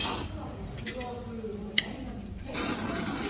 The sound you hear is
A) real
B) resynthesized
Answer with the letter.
A